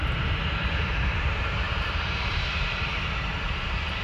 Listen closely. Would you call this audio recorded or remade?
remade